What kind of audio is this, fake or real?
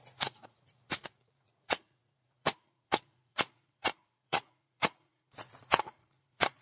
fake